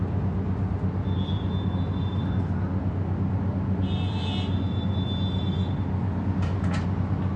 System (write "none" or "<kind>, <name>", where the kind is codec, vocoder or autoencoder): none